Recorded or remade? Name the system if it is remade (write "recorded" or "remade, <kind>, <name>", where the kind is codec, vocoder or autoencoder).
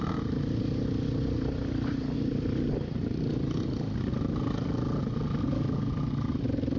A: recorded